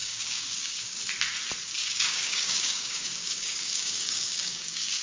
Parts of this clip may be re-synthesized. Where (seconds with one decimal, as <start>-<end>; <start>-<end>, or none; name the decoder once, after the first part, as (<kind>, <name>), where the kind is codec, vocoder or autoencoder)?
0.0-1.0 (codec, DAC); 1.8-5.0